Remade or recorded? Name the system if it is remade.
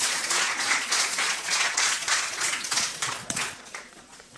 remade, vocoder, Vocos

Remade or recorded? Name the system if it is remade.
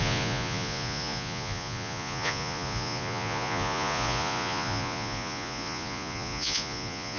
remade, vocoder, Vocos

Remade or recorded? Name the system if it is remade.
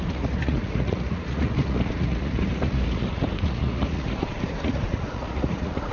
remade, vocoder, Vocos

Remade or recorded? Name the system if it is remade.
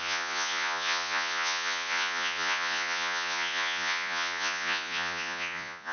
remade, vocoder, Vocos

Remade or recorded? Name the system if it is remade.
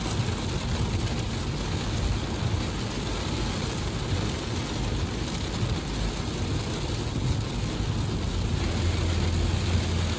recorded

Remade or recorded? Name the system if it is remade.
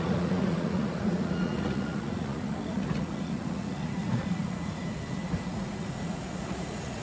remade, vocoder, Vocos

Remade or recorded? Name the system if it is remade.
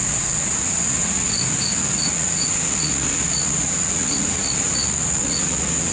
remade, vocoder, Vocos